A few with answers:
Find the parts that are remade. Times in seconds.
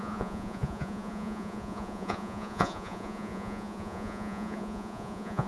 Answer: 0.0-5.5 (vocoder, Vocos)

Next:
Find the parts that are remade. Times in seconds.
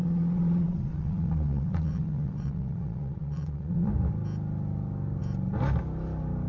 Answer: 0.0-3.9 (vocoder, Vocos)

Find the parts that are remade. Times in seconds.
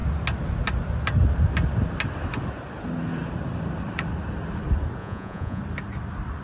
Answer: 5.0-5.6 (vocoder, Vocos)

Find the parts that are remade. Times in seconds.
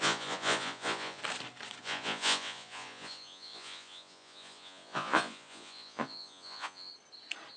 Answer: 0.0-1.2 (vocoder, Vocos); 1.8-6.9